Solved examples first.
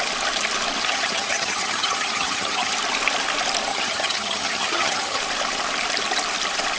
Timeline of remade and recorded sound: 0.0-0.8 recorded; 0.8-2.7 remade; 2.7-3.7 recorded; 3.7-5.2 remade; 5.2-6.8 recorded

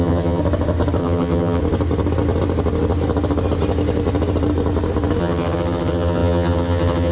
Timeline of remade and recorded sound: 0.0-0.4 remade; 0.4-1.0 recorded; 1.0-1.6 remade; 1.6-5.2 recorded; 5.2-7.1 remade

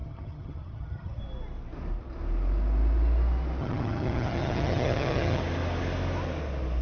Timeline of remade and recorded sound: 0.0-1.2 remade; 1.2-3.6 recorded; 3.6-5.4 remade; 5.4-6.8 recorded

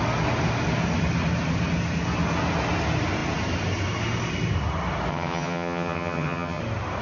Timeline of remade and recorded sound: 0.0-5.1 recorded; 5.1-6.6 remade; 6.6-7.0 recorded

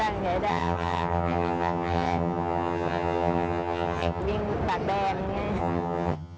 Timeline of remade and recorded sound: 0.0-0.5 recorded; 0.5-4.2 remade; 4.2-5.6 recorded; 5.6-6.4 remade